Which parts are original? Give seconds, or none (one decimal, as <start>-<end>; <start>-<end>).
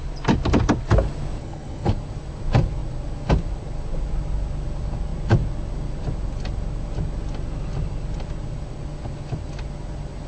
0.0-1.4; 1.9-10.3